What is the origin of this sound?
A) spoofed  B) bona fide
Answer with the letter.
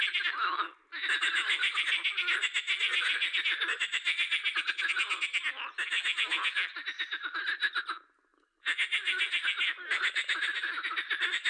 B